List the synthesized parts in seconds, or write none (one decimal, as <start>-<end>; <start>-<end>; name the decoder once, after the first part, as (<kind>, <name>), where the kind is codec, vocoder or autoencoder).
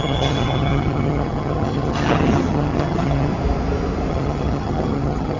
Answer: 0.0-3.3 (vocoder, HiFi-GAN); 4.1-5.4